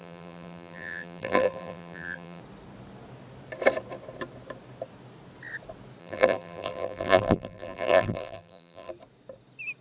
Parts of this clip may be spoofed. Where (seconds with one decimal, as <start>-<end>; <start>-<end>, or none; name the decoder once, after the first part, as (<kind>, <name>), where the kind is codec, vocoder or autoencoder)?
0.0-2.4 (vocoder, BigVGAN v2); 6.0-8.9